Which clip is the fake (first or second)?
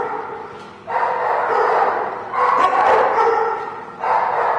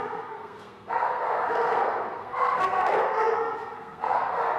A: second